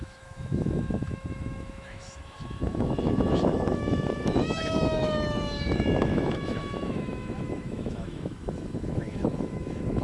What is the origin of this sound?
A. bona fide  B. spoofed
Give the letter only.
B